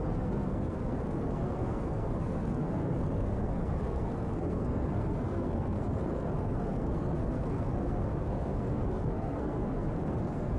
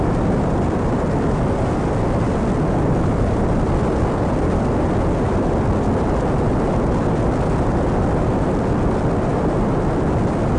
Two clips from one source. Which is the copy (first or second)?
first